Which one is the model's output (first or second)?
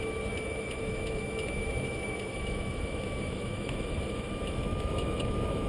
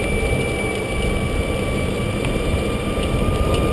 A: first